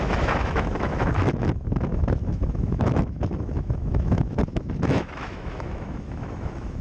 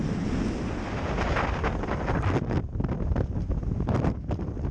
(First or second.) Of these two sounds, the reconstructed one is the first